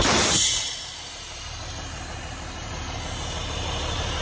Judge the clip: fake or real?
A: fake